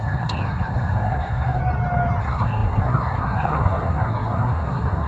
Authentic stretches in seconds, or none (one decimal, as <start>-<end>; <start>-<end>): 1.6-2.2